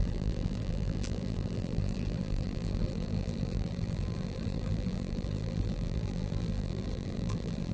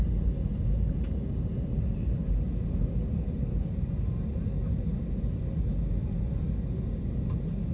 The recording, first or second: second